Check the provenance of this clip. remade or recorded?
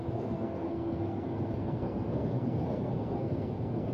remade